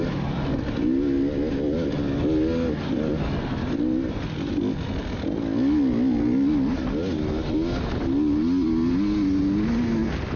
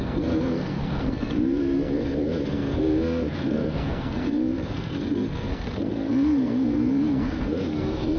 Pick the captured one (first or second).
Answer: first